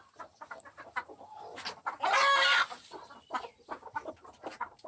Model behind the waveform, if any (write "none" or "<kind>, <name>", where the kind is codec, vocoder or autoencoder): none